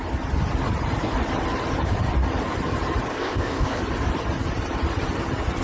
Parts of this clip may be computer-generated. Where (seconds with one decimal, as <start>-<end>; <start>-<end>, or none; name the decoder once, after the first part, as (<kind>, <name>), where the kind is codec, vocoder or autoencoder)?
3.1-3.8 (codec, ZipCodec)